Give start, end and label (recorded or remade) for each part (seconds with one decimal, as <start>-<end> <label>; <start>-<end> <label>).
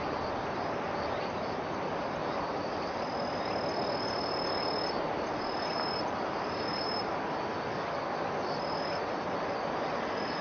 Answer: 0.0-10.4 recorded